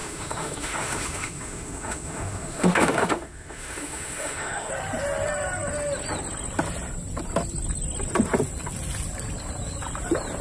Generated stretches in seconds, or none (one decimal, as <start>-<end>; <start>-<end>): 0.0-4.7